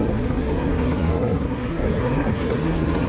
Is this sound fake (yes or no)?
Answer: yes